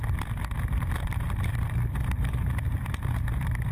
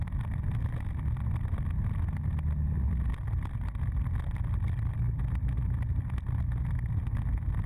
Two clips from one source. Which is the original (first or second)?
second